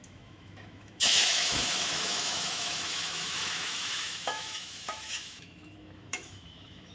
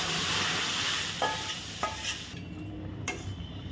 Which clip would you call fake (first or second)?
first